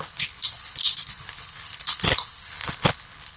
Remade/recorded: remade